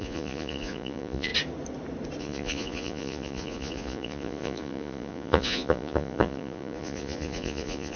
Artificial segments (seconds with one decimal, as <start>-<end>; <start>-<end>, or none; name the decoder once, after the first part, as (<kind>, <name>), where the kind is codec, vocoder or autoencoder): 0.0-1.3 (vocoder, Vocos); 2.2-8.0